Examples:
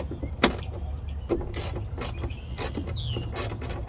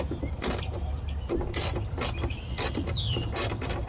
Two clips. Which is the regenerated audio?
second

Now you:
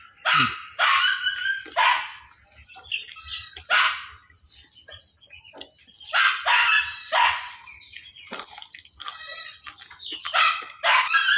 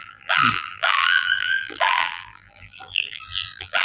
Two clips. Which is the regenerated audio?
second